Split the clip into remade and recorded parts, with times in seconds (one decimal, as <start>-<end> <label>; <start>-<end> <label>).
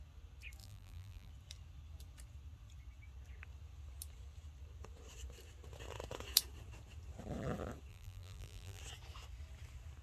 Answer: 0.0-0.6 recorded; 0.6-1.3 remade; 1.3-7.9 recorded; 7.9-8.8 remade; 8.8-10.0 recorded